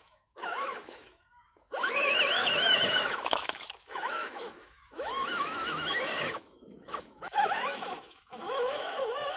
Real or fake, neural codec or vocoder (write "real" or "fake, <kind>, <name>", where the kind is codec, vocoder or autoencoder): fake, autoencoder, DAC-VAE